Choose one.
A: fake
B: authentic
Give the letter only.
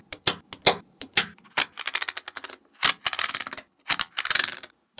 B